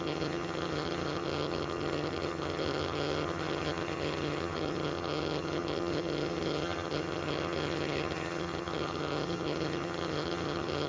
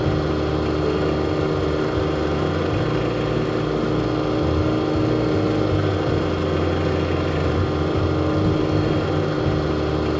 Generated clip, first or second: first